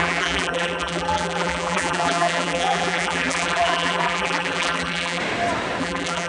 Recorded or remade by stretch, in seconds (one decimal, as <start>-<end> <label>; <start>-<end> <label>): 0.0-5.2 remade; 5.2-5.8 recorded; 5.8-6.3 remade